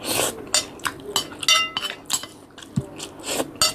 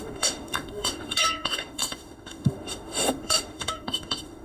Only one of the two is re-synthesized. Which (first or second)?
second